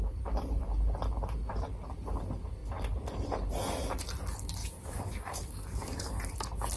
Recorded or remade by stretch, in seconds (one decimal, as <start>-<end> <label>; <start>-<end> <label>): 0.0-4.6 recorded; 4.6-6.2 remade; 6.2-6.8 recorded